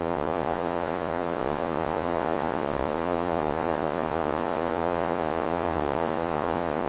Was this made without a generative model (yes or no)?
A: no